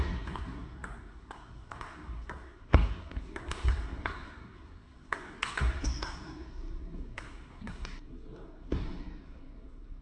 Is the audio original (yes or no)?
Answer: no